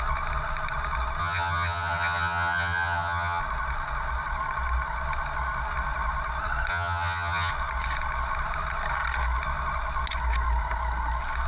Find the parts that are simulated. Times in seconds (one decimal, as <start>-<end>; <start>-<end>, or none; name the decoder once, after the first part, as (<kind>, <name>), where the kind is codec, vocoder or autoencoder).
1.2-3.4 (vocoder, HiFi-GAN); 6.7-7.5